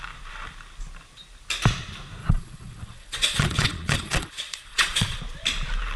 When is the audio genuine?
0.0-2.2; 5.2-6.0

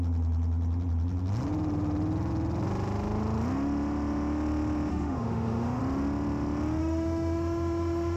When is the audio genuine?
0.0-4.9; 5.8-6.8